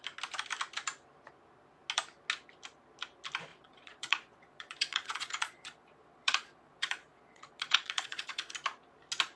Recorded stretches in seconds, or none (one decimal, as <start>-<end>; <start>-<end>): 0.0-3.5; 8.5-9.4